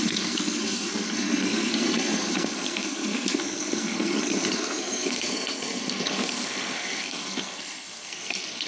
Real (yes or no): no